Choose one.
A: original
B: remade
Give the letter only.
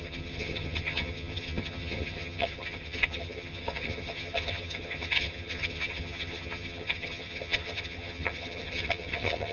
B